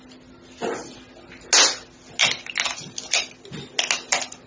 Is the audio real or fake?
real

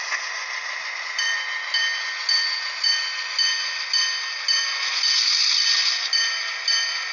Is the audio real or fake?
real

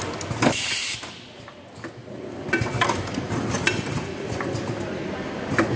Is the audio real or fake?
real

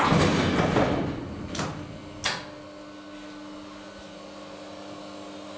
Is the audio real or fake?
real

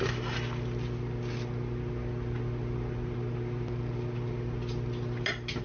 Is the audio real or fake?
real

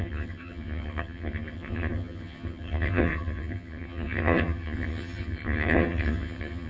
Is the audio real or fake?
fake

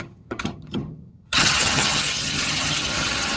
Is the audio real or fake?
fake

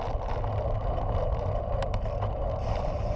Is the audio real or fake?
real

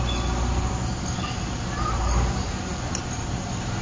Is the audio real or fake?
real